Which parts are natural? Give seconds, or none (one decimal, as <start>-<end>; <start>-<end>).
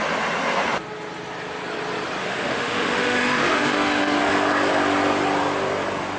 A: 0.0-2.2; 4.3-6.2